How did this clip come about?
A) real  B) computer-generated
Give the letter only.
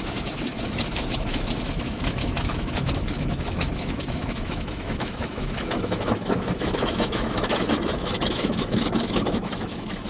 B